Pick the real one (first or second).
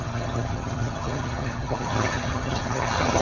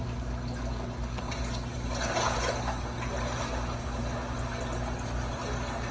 second